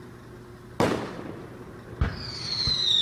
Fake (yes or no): no